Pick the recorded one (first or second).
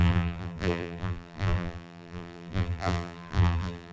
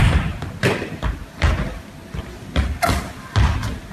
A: second